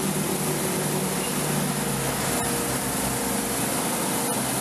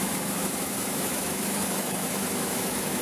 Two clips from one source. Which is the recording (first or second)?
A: first